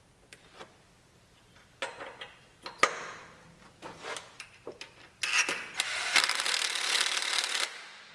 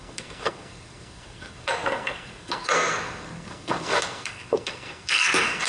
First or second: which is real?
first